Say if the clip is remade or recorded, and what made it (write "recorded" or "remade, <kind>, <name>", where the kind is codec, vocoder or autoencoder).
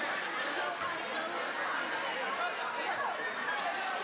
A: recorded